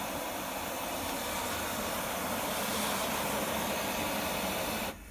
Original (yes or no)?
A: yes